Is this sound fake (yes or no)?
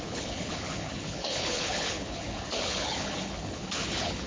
yes